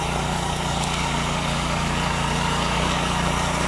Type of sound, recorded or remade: remade